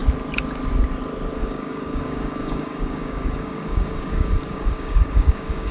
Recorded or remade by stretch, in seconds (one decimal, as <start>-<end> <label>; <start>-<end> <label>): 0.0-1.4 recorded; 1.4-5.7 remade